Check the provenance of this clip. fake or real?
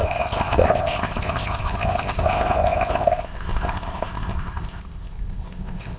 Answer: fake